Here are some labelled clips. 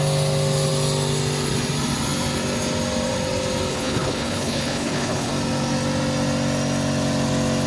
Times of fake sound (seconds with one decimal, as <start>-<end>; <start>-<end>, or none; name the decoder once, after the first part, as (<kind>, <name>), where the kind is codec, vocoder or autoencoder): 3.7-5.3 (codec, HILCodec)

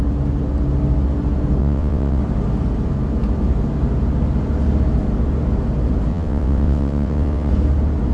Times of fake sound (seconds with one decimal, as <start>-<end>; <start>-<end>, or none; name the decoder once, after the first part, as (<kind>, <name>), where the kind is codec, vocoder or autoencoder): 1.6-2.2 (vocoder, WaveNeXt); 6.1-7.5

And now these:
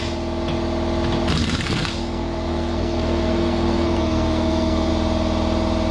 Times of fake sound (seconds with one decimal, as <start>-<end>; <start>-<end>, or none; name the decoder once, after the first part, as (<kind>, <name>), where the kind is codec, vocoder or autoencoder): 1.4-4.9 (codec, SNAC)

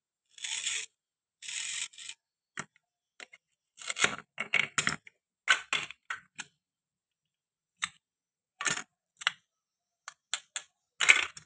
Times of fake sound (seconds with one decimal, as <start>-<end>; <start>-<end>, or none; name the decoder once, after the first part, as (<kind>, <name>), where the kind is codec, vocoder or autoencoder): 8.3-9.1 (vocoder, BigVGAN v2)

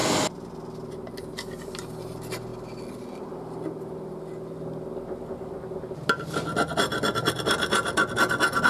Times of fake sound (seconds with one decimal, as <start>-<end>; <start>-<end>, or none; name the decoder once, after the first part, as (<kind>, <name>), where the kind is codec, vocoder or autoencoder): none